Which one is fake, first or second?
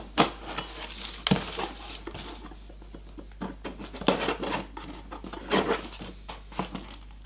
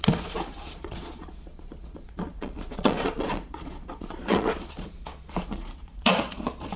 second